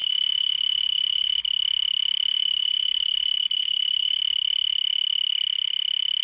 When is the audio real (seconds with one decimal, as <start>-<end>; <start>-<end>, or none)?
1.4-2.3; 4.2-6.2